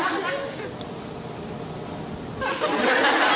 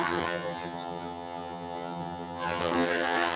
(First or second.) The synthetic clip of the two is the second